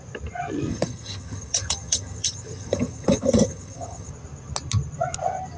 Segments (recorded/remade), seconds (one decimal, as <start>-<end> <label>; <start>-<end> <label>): 0.0-0.7 recorded; 0.7-4.1 remade; 4.1-5.6 recorded

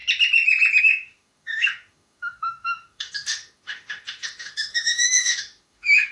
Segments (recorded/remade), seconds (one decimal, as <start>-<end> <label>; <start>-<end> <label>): 0.0-0.8 recorded; 0.8-6.1 remade

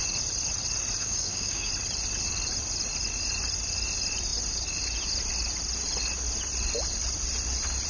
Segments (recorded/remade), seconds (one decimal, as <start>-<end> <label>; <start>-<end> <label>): 0.0-1.0 recorded; 1.0-1.7 remade; 1.7-7.9 recorded

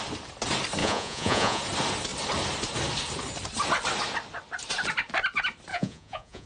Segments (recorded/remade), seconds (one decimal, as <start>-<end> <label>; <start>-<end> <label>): 0.0-0.8 recorded; 0.8-1.6 remade; 1.6-5.7 recorded; 5.7-6.5 remade

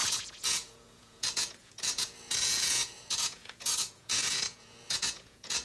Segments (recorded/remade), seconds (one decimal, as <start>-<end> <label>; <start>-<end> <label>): 0.0-5.6 remade

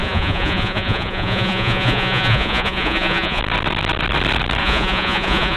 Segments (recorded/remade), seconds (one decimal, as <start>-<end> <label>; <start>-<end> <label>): 0.0-3.4 remade; 3.4-4.6 recorded; 4.6-5.6 remade